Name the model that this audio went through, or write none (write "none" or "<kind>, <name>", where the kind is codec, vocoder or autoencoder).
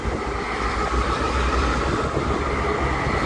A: none